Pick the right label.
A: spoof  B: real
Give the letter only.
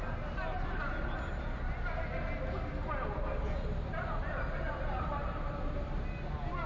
B